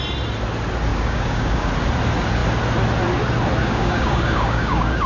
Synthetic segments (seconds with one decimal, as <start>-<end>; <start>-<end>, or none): 0.9-1.7; 3.6-5.1